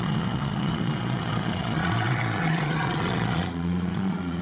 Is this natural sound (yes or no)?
no